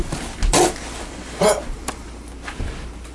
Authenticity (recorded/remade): recorded